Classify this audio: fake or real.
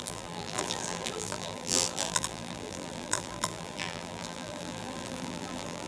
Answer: fake